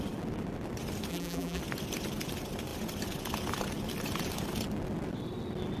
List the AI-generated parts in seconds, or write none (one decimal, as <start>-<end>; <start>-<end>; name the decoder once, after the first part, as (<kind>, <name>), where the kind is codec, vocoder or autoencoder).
1.1-1.6 (vocoder, BigVGAN v2)